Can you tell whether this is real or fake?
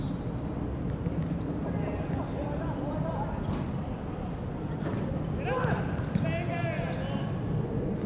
real